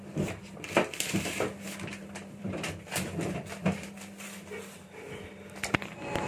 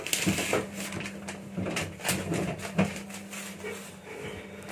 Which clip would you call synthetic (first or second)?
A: first